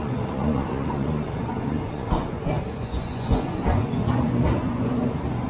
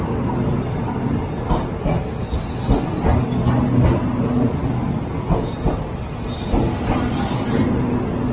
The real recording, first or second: second